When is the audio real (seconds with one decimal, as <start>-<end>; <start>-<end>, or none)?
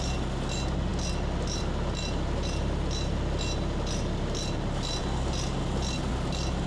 0.0-6.7